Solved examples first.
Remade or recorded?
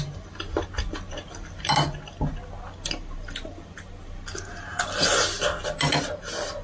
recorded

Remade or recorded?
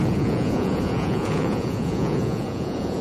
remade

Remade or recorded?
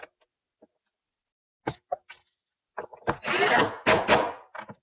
recorded